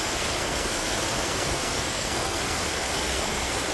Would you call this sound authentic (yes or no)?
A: no